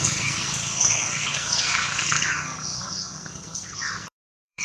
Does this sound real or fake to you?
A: fake